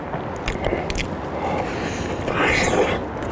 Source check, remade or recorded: recorded